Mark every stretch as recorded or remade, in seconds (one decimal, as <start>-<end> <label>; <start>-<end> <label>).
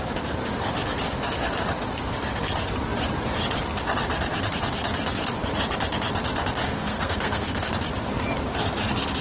0.0-6.6 recorded; 6.6-7.7 remade; 7.7-9.2 recorded